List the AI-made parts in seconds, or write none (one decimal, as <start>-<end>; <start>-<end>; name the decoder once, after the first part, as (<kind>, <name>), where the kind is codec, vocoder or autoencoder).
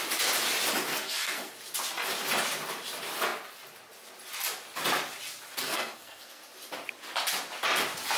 0.9-1.5 (codec, SNAC); 5.6-6.4